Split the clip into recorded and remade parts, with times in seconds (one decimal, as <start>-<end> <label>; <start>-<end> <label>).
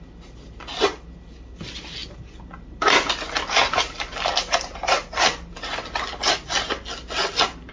0.0-7.7 recorded